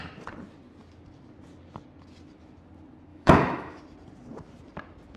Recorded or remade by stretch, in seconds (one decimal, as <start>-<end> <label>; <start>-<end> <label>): 0.0-3.1 recorded; 3.1-3.8 remade; 3.8-5.2 recorded